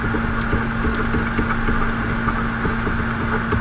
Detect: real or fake real